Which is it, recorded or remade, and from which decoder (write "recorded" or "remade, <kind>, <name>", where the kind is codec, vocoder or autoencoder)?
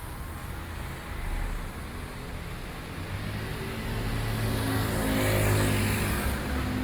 recorded